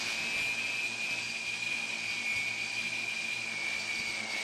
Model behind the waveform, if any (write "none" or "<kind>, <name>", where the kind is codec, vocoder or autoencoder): none